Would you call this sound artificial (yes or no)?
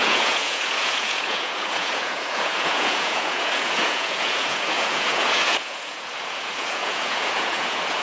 yes